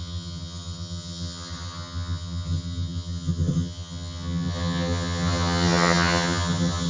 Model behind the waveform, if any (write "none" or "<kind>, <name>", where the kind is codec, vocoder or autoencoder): vocoder, HiFi-GAN